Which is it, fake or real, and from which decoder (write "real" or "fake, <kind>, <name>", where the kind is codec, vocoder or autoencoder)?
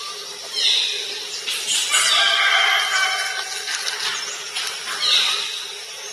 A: real